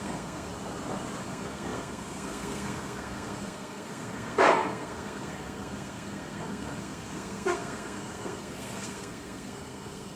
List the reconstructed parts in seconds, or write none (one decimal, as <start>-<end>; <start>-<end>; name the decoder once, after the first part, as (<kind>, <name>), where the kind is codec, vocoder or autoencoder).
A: 0.0-0.5 (codec, SNAC); 1.2-10.2